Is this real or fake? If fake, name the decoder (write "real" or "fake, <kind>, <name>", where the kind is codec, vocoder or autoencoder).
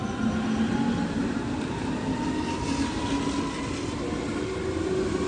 real